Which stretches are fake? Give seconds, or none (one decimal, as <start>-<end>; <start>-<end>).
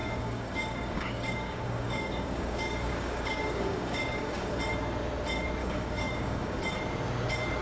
0.0-4.6; 5.6-6.6